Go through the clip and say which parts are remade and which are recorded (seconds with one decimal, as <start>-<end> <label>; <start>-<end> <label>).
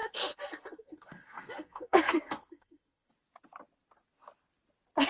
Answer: 0.0-3.1 remade; 3.1-5.1 recorded